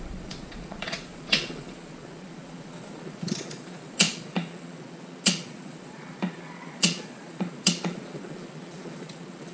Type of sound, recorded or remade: remade